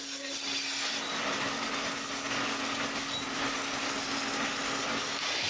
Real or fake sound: real